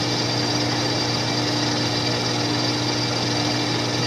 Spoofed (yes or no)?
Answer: no